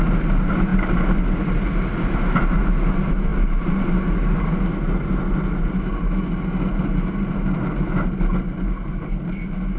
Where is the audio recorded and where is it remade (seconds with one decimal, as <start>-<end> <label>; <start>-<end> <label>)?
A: 0.0-9.8 recorded

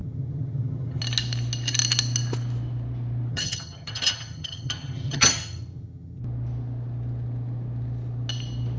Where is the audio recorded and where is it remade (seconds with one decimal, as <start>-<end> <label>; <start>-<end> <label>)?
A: 0.0-1.0 remade; 1.0-3.3 recorded; 3.3-6.2 remade; 6.2-8.8 recorded

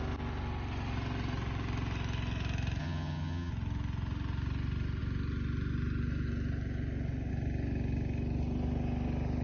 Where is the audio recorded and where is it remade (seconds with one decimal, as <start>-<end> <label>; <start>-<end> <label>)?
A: 0.0-2.8 recorded; 2.8-3.5 remade; 3.5-9.4 recorded

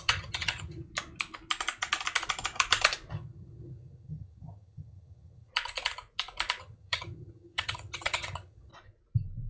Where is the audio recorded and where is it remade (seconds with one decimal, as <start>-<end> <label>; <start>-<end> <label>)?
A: 0.0-0.9 remade; 0.9-3.1 recorded; 3.1-5.5 remade; 5.5-6.6 recorded; 6.6-8.7 remade; 8.7-9.5 recorded